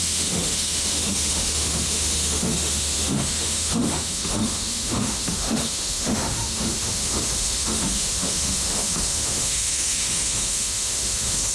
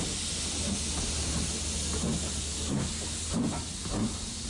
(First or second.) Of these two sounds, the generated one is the first